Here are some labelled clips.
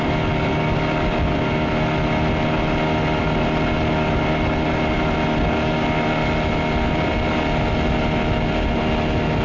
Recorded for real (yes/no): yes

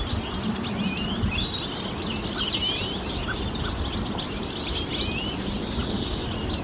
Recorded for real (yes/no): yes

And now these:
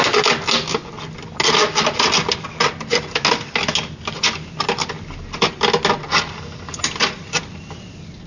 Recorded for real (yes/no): yes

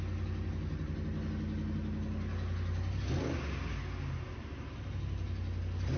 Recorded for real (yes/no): yes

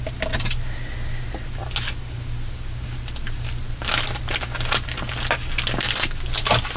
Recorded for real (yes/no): yes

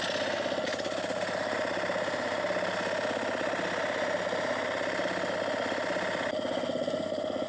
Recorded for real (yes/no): yes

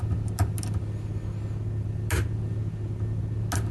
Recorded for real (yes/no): yes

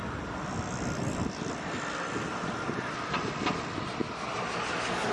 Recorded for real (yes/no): yes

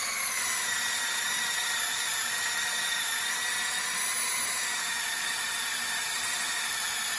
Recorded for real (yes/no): yes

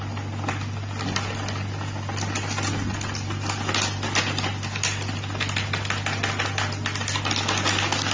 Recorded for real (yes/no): yes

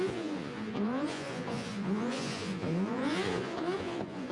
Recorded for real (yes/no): no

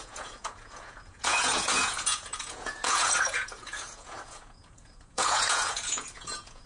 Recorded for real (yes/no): no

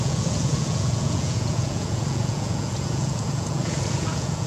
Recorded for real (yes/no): no